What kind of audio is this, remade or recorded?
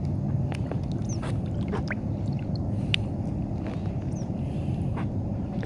recorded